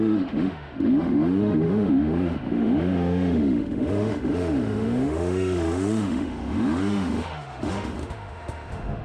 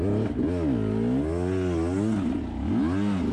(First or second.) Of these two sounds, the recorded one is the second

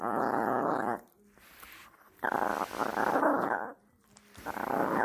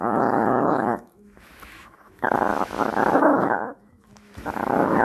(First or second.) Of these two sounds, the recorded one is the first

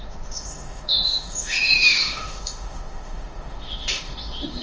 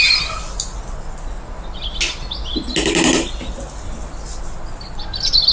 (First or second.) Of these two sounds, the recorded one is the second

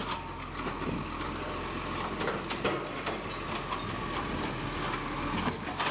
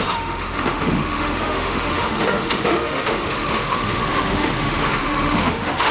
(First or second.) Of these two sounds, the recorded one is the first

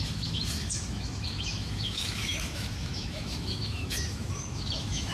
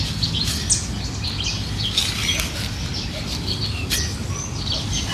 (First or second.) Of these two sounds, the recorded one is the second